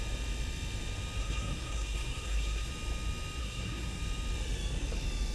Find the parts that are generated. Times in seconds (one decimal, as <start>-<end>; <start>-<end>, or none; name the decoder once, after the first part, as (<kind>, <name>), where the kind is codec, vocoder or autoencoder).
1.2-2.7 (codec, SNAC); 3.4-4.0